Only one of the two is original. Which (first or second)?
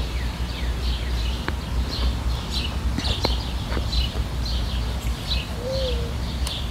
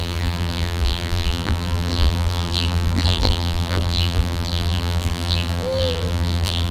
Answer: first